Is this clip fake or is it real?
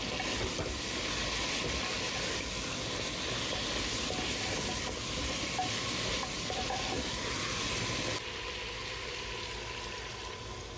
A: real